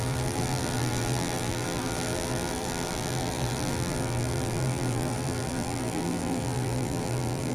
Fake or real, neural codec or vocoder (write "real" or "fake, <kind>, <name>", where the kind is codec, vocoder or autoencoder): fake, vocoder, BigVGAN v2